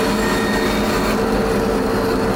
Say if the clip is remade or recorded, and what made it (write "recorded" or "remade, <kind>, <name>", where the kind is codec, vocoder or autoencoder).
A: recorded